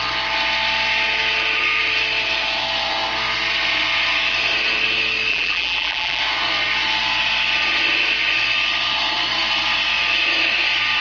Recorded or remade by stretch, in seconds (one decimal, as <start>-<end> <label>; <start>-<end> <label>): 0.0-5.3 recorded; 5.3-6.2 remade; 6.2-11.0 recorded